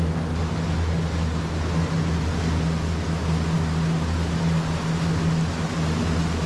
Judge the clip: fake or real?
real